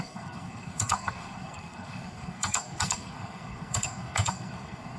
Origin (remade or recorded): remade